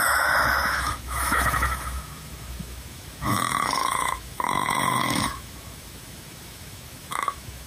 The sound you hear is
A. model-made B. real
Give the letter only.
A